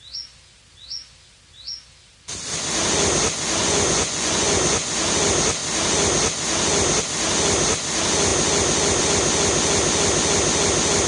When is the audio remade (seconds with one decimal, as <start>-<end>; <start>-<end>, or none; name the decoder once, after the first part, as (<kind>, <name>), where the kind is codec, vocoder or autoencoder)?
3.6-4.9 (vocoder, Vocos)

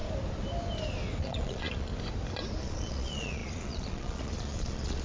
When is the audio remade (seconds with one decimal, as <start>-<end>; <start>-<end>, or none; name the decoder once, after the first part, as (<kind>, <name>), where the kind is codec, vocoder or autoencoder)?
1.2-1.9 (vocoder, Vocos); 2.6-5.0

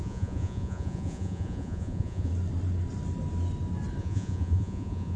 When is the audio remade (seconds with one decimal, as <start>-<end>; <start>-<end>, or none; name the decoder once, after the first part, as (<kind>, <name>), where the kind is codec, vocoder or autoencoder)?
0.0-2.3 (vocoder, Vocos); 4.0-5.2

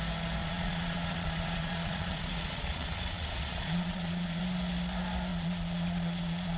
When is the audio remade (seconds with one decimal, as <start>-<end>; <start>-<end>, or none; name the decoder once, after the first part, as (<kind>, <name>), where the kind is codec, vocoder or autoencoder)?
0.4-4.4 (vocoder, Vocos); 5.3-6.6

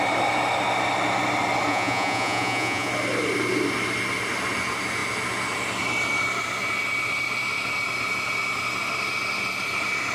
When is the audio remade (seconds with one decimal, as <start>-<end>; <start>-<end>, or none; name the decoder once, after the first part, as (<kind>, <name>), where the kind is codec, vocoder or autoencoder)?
1.7-2.9 (vocoder, Vocos)

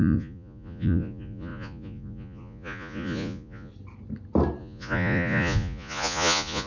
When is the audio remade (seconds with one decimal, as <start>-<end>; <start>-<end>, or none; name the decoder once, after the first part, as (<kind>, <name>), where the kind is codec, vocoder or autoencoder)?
0.0-3.7 (vocoder, Vocos); 4.6-6.7